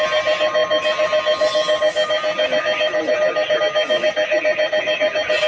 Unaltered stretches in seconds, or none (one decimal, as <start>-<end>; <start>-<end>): 0.0-5.5